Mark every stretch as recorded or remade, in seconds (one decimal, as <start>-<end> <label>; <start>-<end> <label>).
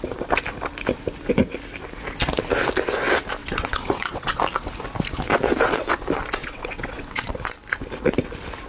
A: 0.0-3.4 recorded; 3.4-4.3 remade; 4.3-6.4 recorded; 6.4-7.3 remade; 7.3-8.7 recorded